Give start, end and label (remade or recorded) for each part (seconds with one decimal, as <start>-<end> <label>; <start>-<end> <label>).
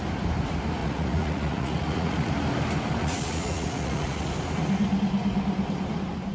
0.0-0.8 recorded; 0.8-2.3 remade; 2.3-3.0 recorded; 3.0-4.3 remade; 4.3-6.3 recorded